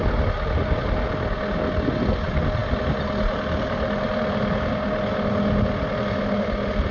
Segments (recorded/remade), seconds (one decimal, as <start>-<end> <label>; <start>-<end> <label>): 0.0-6.9 recorded

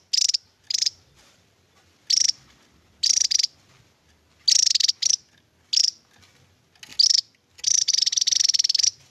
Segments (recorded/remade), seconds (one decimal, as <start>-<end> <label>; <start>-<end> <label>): 0.0-9.1 recorded

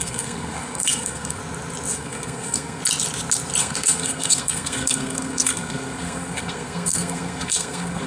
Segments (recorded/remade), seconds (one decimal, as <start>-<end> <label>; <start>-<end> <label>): 0.0-1.4 remade; 1.4-1.9 recorded; 1.9-2.8 remade; 2.8-3.6 recorded; 3.6-8.1 remade

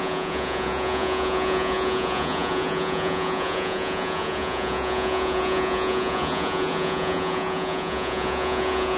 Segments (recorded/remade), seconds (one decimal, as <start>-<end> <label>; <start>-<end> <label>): 0.0-9.0 remade